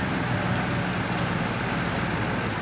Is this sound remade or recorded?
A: recorded